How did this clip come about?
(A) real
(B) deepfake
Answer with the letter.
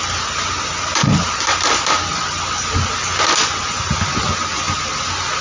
A